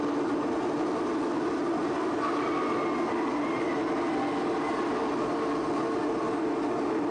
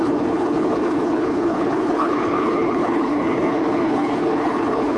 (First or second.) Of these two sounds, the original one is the first